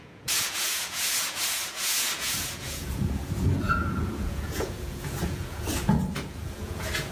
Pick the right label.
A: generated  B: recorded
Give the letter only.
A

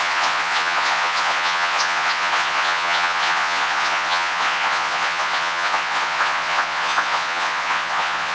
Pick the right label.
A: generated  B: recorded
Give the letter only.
A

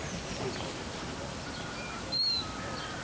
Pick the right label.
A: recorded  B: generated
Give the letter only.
A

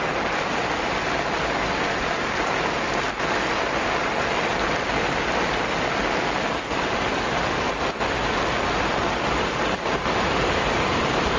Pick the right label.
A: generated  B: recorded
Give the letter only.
B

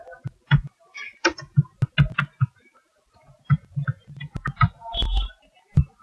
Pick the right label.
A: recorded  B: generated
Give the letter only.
A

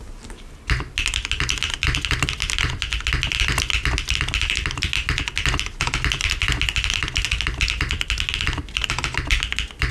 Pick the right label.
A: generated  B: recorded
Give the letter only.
B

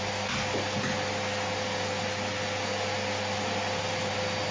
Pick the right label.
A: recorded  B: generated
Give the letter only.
A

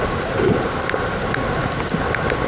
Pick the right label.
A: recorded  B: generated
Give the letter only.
A